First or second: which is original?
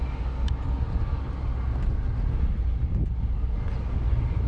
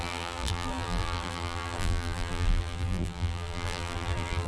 first